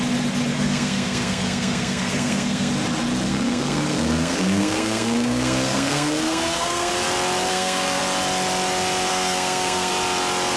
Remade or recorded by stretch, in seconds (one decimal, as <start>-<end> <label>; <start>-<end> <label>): 0.0-0.5 recorded; 0.5-2.7 remade; 2.7-3.3 recorded; 3.3-6.9 remade; 6.9-7.5 recorded; 7.5-8.0 remade; 8.0-9.1 recorded; 9.1-9.9 remade; 9.9-10.6 recorded